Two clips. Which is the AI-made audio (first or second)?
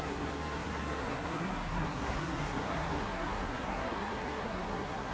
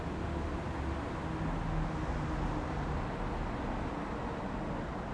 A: first